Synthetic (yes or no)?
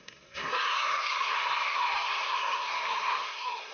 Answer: yes